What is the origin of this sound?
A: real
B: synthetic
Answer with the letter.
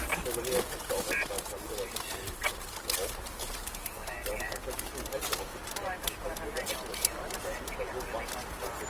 A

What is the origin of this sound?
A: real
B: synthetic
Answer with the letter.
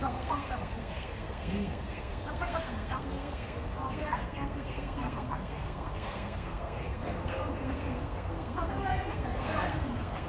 B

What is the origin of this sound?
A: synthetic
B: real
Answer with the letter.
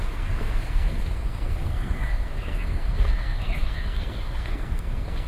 A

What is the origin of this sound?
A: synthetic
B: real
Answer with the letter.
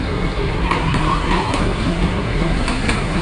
A